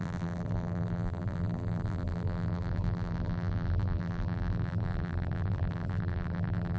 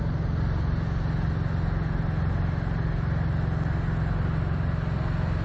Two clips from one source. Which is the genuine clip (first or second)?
second